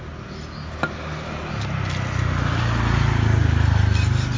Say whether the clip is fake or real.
real